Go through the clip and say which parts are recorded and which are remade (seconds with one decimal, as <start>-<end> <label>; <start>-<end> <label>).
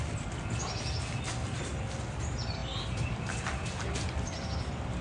0.0-0.6 recorded; 0.6-1.2 remade; 1.2-2.6 recorded; 2.6-4.6 remade; 4.6-5.0 recorded